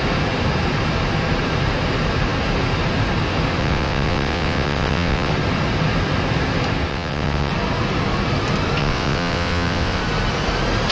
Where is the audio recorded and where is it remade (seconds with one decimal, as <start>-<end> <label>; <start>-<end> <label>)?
0.0-3.6 recorded; 3.6-5.3 remade; 5.3-6.9 recorded; 6.9-7.5 remade; 7.5-8.8 recorded; 8.8-10.0 remade; 10.0-10.9 recorded